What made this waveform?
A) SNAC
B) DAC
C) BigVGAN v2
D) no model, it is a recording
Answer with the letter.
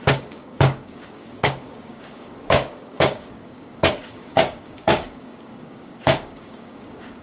B